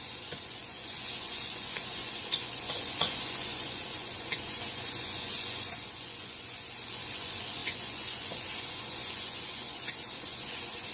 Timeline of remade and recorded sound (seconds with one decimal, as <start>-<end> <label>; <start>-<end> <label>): 0.0-10.9 remade

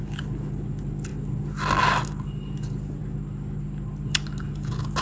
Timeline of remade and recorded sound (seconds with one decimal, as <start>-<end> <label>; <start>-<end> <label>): 0.0-5.0 recorded

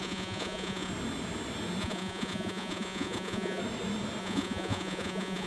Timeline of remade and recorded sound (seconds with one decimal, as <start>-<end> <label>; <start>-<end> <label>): 0.0-0.9 remade; 0.9-1.8 recorded; 1.8-3.6 remade; 3.6-4.2 recorded; 4.2-5.5 remade

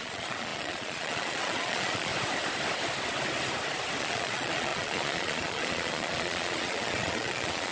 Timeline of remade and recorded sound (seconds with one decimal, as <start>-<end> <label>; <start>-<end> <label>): 0.0-2.1 remade; 2.1-4.0 recorded; 4.0-7.7 remade